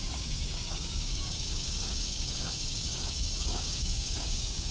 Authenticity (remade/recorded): remade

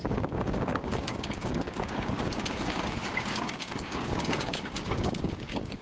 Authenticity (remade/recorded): remade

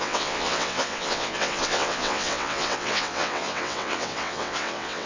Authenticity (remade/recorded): remade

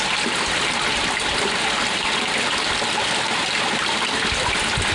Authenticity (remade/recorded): recorded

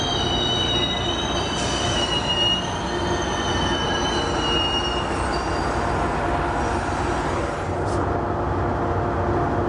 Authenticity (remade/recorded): recorded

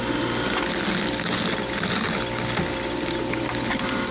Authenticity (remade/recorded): recorded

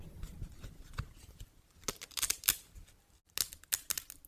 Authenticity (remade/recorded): recorded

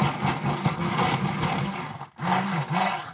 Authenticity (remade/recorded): recorded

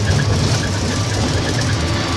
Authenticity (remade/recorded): recorded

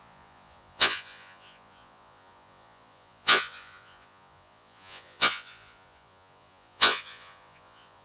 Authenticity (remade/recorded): remade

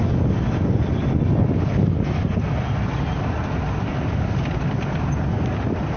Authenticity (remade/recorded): recorded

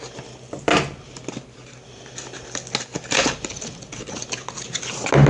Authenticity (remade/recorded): recorded